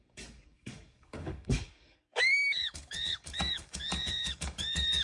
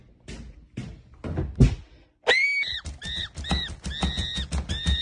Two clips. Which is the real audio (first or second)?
second